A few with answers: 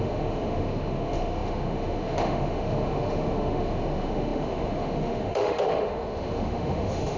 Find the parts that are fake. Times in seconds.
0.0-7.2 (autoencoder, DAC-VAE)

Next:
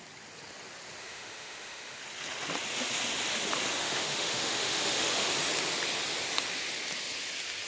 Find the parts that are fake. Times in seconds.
1.0-2.0 (autoencoder, DAC-VAE); 3.8-5.3

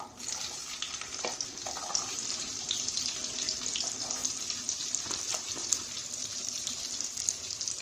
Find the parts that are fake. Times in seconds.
none

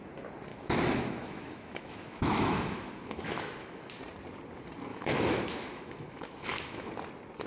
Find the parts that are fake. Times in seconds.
0.5-3.9 (autoencoder, DAC-VAE); 4.9-6.9

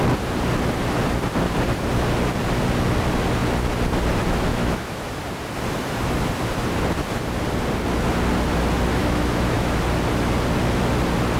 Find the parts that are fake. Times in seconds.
4.5-5.1 (autoencoder, DAC-VAE); 9.0-9.8